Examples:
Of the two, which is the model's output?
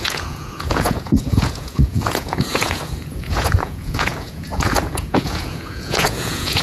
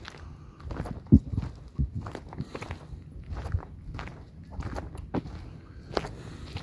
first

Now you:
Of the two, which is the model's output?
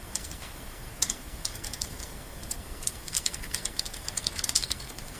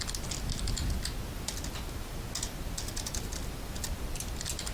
first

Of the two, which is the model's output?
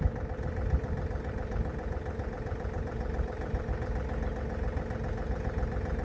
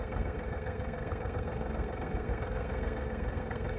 second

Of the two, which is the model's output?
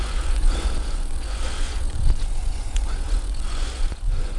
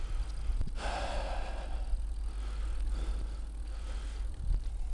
first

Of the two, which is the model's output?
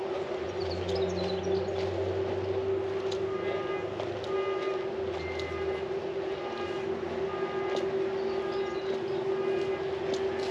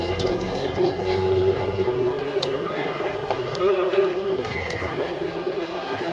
second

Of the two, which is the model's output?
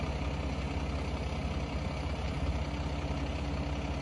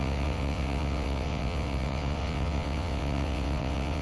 second